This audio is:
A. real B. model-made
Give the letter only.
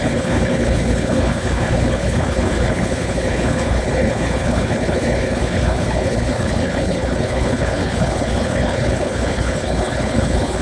B